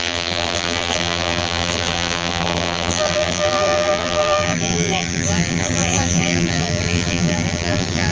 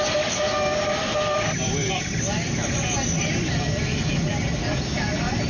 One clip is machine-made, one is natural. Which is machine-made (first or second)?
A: first